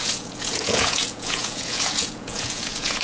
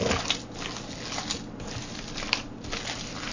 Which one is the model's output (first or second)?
first